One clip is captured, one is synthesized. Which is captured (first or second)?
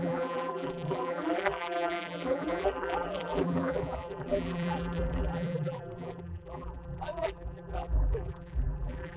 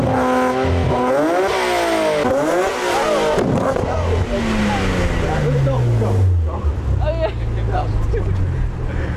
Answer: second